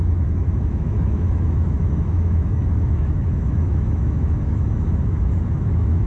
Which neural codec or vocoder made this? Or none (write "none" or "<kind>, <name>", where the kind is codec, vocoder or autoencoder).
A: autoencoder, DAC-VAE